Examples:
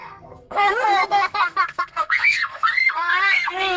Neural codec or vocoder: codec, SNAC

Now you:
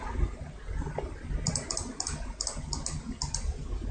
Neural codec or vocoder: none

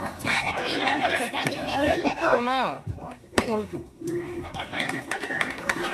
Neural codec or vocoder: codec, SNAC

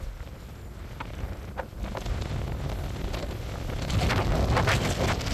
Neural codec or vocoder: none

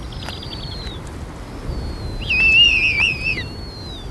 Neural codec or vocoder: none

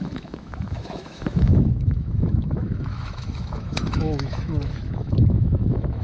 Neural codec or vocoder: autoencoder, DAC-VAE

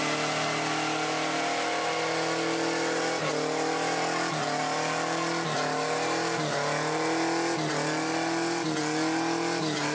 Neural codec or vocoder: none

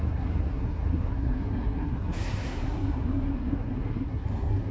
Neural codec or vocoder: codec, SNAC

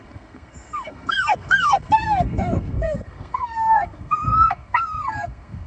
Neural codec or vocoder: codec, SNAC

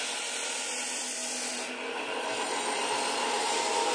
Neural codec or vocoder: none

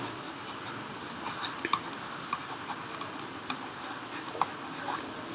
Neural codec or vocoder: none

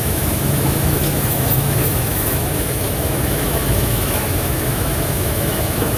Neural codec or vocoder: autoencoder, DAC-VAE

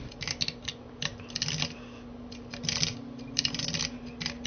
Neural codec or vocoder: none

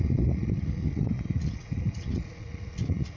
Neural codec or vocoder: vocoder, Vocos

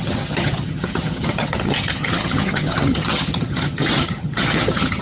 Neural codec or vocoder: vocoder, HiFi-GAN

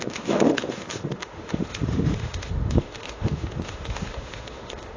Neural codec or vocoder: autoencoder, DAC-VAE